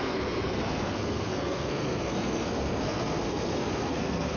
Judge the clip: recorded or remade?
remade